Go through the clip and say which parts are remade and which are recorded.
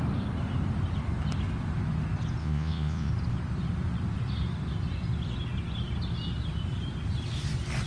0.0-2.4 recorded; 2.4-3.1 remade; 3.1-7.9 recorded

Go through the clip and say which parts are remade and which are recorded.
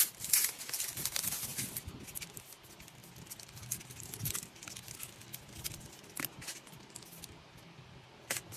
0.0-8.6 recorded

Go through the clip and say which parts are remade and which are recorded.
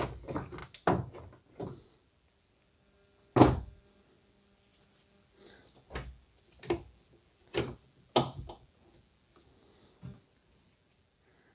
0.0-11.5 recorded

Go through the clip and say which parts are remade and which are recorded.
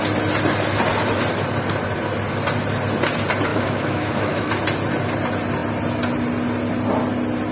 0.0-3.5 recorded; 3.5-4.5 remade; 4.5-7.5 recorded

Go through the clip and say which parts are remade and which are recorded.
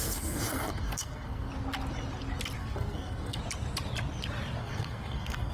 0.0-1.5 remade; 1.5-2.6 recorded; 2.6-3.4 remade; 3.4-4.6 recorded; 4.6-5.5 remade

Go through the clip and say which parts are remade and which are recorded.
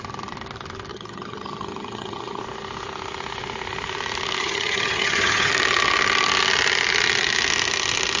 0.0-0.9 recorded; 0.9-2.4 remade; 2.4-4.4 recorded; 4.4-5.5 remade; 5.5-8.2 recorded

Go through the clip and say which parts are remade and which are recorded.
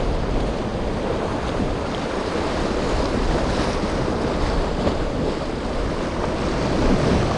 0.0-7.4 recorded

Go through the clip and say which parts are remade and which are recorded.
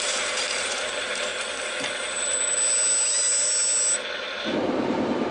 0.0-1.3 remade; 1.3-4.4 recorded; 4.4-5.3 remade